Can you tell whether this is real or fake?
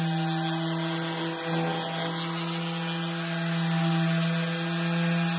real